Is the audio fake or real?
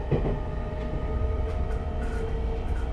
real